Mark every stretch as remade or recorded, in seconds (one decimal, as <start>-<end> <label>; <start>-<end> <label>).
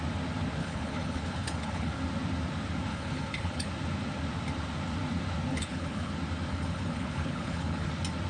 0.0-0.6 recorded; 0.6-2.0 remade; 2.0-2.9 recorded; 2.9-3.7 remade; 3.7-5.5 recorded; 5.5-6.1 remade; 6.1-6.5 recorded; 6.5-7.9 remade; 7.9-8.3 recorded